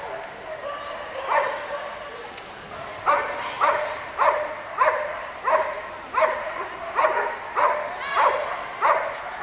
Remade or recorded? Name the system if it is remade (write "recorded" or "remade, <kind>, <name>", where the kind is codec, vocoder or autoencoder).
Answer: recorded